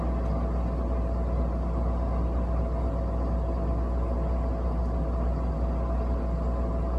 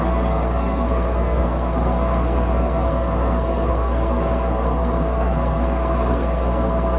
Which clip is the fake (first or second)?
second